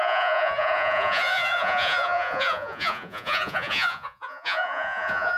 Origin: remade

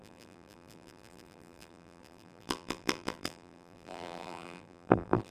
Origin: remade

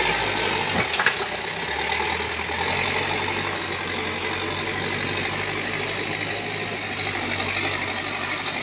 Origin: recorded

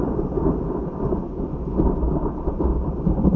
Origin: remade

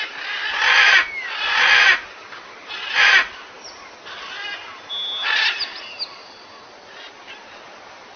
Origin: recorded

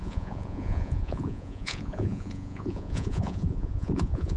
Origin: remade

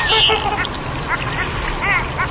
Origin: recorded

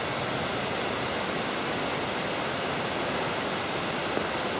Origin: recorded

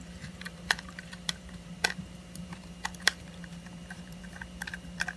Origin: remade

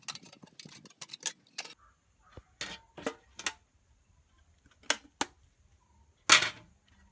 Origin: recorded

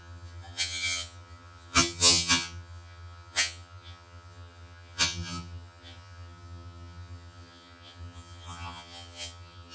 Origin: remade